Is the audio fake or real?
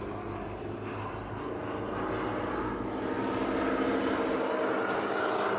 real